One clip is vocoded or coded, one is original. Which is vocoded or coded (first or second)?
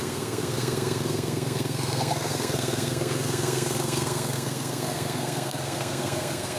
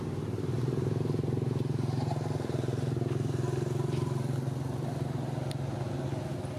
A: first